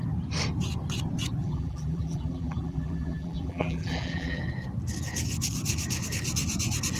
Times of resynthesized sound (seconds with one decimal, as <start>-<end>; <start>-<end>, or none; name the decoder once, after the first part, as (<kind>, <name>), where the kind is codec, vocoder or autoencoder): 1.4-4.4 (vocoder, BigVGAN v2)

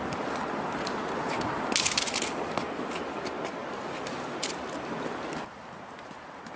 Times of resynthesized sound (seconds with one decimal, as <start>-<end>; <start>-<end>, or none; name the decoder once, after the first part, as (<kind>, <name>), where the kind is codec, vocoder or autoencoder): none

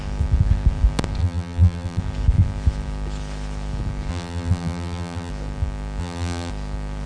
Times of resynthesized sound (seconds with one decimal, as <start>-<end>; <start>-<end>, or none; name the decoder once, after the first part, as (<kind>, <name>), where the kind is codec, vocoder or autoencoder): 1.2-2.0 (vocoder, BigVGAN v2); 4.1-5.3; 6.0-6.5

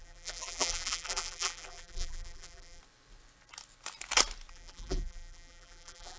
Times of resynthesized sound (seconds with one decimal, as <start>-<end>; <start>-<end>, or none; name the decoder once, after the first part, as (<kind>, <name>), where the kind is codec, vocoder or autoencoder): 0.0-2.8 (vocoder, BigVGAN v2); 4.5-6.2